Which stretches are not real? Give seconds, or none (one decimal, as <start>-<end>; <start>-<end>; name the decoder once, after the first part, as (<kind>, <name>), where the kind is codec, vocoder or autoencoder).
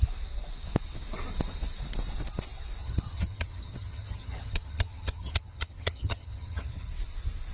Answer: 2.8-6.9 (vocoder, HiFi-GAN)